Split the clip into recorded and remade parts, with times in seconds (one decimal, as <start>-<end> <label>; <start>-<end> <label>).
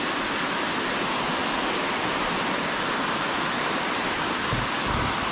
0.0-5.3 recorded